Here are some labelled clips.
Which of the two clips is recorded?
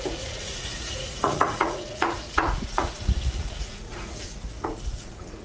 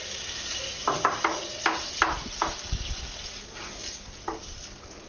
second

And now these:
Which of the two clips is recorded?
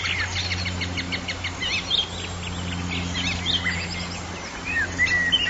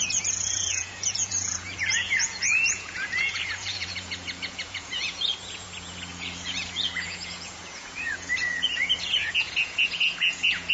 first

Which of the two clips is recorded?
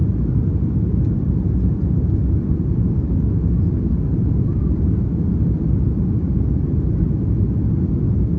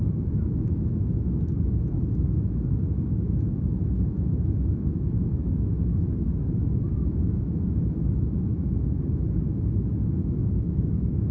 first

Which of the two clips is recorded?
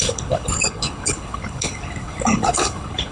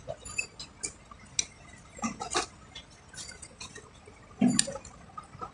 second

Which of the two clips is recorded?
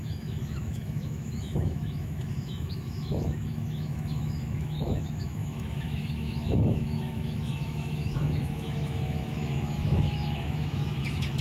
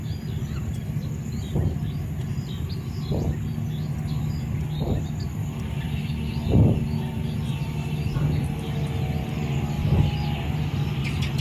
second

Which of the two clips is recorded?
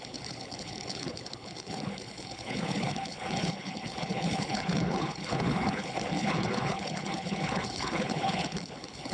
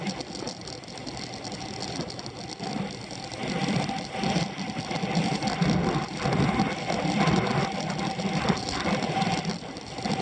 second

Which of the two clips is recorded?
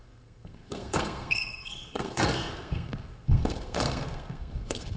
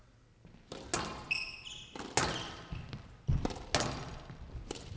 second